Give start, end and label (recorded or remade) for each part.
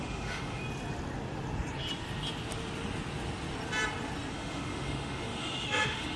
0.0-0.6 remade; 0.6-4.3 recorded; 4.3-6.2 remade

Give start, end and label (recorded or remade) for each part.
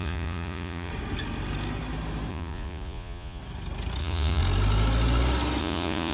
0.0-0.9 remade; 0.9-2.3 recorded; 2.3-3.4 remade; 3.4-4.0 recorded; 4.0-4.4 remade; 4.4-5.6 recorded; 5.6-6.1 remade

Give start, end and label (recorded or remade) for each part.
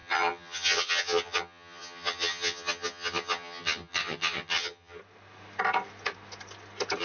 0.0-5.0 remade; 5.0-7.0 recorded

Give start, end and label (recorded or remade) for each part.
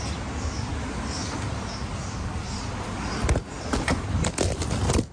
0.0-5.1 recorded